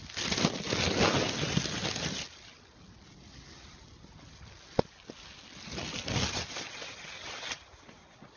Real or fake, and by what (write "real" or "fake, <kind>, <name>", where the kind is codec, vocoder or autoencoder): real